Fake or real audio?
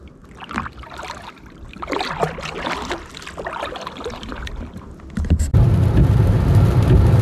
real